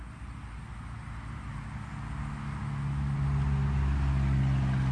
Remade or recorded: recorded